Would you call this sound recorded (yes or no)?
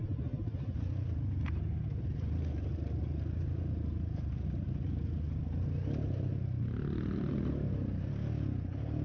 yes